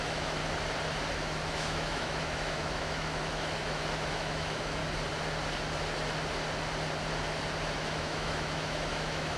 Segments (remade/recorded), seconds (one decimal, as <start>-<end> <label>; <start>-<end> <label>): 0.0-0.4 remade; 0.4-1.1 recorded; 1.1-4.8 remade; 4.8-7.8 recorded; 7.8-9.4 remade